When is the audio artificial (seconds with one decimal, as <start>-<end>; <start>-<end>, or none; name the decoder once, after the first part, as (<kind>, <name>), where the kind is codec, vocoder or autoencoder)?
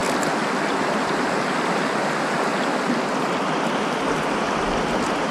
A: none